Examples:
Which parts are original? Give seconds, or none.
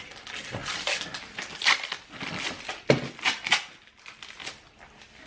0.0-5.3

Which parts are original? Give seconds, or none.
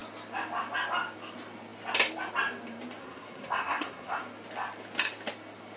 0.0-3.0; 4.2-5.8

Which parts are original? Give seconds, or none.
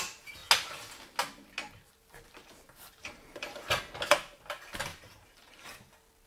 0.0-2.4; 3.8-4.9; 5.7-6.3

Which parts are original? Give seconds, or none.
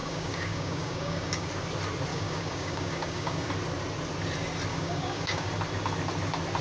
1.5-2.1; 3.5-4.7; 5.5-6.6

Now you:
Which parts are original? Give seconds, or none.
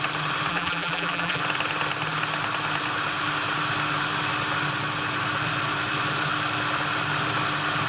0.0-0.5; 1.4-7.9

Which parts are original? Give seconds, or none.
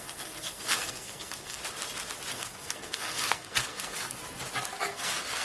1.6-2.3; 4.2-4.8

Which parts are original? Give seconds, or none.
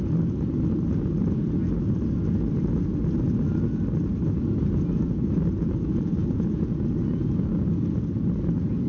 0.0-6.2; 6.8-8.9